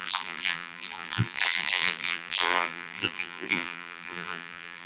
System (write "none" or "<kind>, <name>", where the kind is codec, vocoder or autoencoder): vocoder, BigVGAN v2